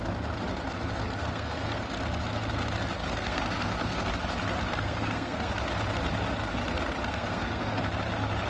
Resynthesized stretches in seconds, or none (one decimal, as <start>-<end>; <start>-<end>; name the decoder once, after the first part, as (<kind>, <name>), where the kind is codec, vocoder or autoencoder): 1.2-1.8 (codec, SNAC); 3.0-4.1; 4.7-5.5; 7.0-7.8